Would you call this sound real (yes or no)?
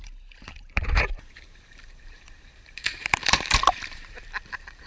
no